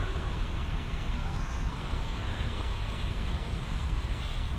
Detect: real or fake fake